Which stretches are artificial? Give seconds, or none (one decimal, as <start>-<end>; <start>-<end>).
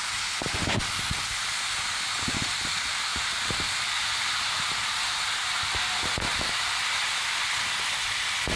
3.1-6.7